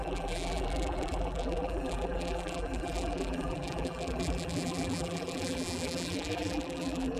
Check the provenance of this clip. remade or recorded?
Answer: remade